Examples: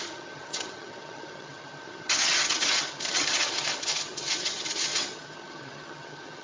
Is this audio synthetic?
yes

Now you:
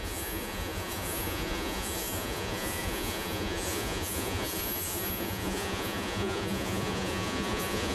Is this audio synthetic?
yes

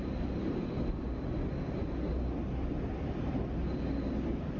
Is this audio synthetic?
no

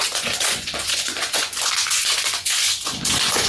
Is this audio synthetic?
yes